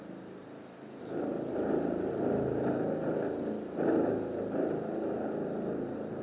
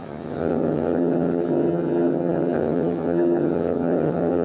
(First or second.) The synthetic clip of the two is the second